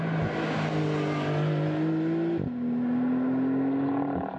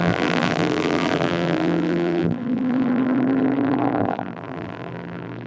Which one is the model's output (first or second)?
second